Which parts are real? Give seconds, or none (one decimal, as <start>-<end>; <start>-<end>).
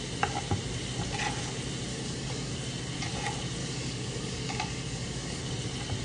0.0-1.9; 2.5-3.6; 5.4-6.0